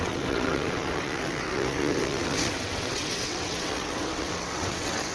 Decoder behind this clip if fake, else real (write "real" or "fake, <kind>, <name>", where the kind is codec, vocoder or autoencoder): fake, vocoder, WaveNeXt